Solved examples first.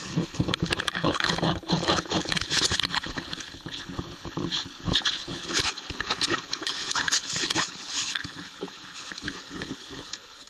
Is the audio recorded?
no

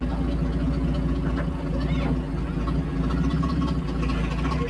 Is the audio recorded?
yes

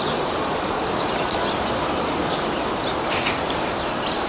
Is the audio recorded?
yes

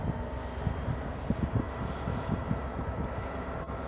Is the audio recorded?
yes